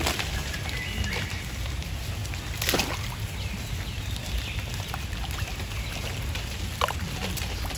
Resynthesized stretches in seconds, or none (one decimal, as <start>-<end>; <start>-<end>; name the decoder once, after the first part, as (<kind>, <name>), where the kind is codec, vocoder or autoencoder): none